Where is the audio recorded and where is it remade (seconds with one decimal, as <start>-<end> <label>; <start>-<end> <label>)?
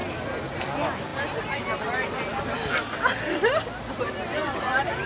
0.0-4.4 recorded; 4.4-5.1 remade